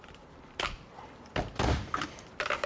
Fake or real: real